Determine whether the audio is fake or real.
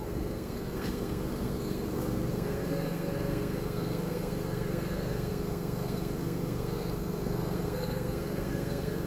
fake